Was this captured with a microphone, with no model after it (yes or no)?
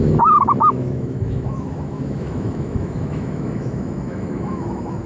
no